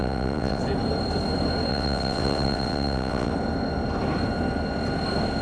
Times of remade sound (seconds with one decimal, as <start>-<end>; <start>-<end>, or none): 0.0-0.6; 1.7-3.3